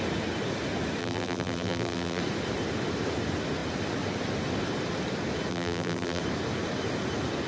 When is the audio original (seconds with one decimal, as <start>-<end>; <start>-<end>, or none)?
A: 0.0-1.0; 2.2-5.5; 6.2-7.5